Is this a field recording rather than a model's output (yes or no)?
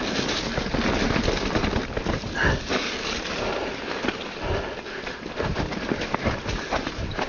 yes